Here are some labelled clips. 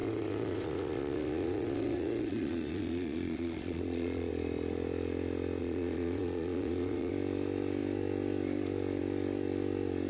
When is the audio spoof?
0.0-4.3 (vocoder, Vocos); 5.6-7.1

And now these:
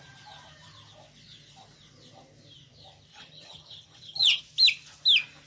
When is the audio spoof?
3.1-4.4 (vocoder, HiFi-GAN)

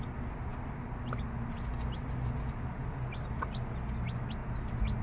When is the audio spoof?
none

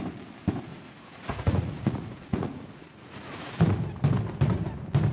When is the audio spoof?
0.7-3.8 (vocoder, Vocos)

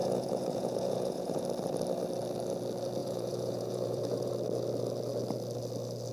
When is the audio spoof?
0.0-1.4 (vocoder, Vocos); 3.0-4.3

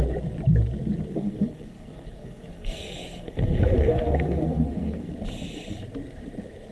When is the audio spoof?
1.1-5.1 (codec, SNAC)

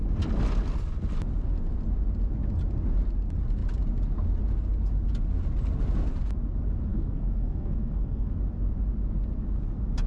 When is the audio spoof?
6.9-8.3 (codec, SNAC)

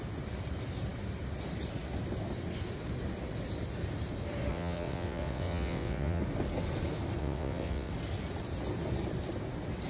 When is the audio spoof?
4.5-6.2 (vocoder, WaveNeXt); 7.2-7.9